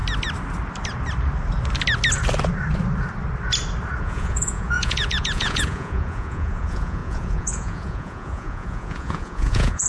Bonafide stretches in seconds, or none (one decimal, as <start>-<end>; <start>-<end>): 0.0-4.0